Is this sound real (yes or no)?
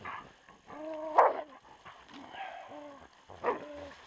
yes